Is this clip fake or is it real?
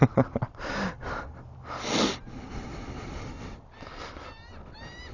real